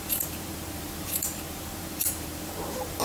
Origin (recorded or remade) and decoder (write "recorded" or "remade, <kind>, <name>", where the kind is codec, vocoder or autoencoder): remade, vocoder, BigVGAN v2